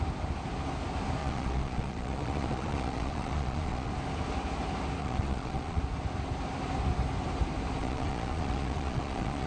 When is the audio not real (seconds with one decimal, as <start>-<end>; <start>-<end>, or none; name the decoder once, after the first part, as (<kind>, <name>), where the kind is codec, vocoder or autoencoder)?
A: 1.2-3.9 (vocoder, Vocos); 5.0-5.8; 7.8-9.5